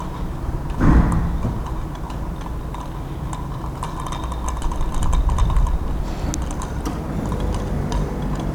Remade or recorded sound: recorded